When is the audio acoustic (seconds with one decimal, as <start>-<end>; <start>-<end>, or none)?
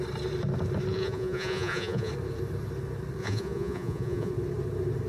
0.0-0.9; 2.1-3.2; 4.3-5.1